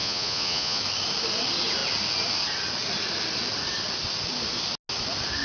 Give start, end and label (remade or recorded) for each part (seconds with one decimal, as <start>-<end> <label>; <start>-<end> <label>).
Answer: 0.0-0.8 remade; 0.8-5.4 recorded